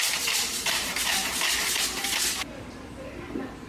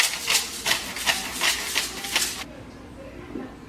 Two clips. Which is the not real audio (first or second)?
first